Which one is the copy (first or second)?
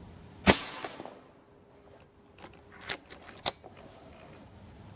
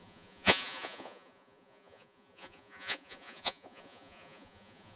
second